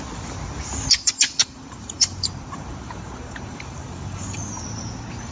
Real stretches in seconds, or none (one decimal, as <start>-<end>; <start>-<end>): 0.0-1.4; 4.6-5.3